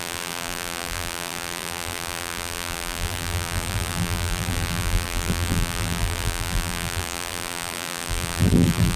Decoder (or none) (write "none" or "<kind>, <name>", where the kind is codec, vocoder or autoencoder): vocoder, BigVGAN v2